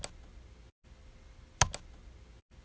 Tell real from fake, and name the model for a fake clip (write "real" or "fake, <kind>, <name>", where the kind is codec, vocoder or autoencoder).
real